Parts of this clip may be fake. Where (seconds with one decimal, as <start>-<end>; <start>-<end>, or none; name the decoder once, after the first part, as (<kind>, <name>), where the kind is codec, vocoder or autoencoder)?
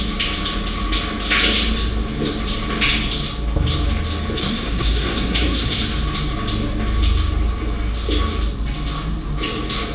4.4-5.8 (codec, SNAC)